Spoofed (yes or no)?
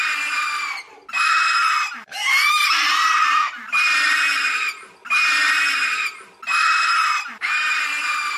no